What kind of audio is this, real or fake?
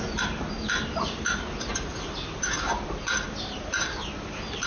real